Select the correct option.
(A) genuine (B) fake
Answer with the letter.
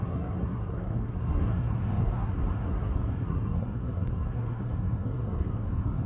B